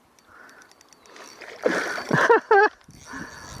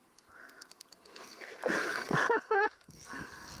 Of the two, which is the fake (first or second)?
second